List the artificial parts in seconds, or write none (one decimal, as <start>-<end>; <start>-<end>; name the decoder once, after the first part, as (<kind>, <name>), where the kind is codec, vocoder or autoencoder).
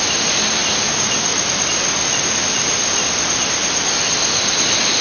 none